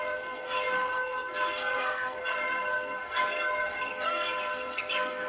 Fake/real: fake